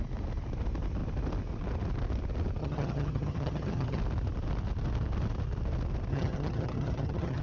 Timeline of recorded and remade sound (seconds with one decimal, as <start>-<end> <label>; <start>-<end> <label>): 0.0-2.6 recorded; 2.6-4.0 remade; 4.0-6.1 recorded; 6.1-7.4 remade